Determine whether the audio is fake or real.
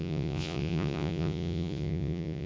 fake